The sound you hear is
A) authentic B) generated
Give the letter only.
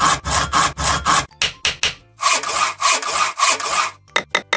A